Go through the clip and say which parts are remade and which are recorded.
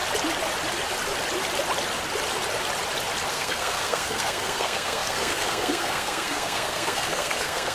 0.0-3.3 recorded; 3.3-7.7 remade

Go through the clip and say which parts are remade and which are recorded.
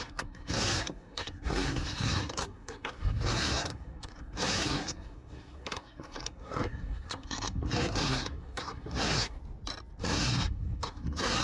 0.0-9.4 remade; 9.4-10.0 recorded; 10.0-11.4 remade